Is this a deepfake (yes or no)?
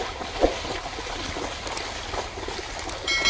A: no